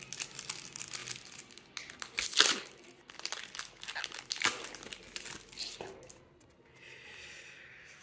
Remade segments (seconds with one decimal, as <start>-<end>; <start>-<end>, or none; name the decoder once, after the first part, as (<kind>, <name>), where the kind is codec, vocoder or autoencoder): none